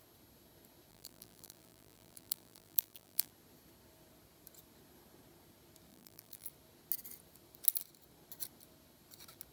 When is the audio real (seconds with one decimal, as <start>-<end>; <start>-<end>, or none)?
0.0-0.9; 3.3-5.9; 6.5-9.5